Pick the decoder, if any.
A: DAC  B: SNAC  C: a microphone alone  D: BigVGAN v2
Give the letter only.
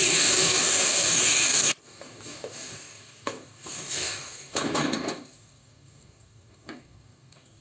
A